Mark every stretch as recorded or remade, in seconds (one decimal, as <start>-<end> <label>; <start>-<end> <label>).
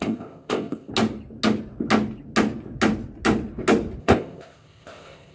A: 0.0-0.9 remade; 0.9-4.0 recorded; 4.0-5.3 remade